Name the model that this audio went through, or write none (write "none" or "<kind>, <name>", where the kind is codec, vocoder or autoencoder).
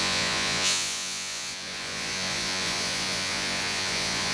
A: vocoder, Vocos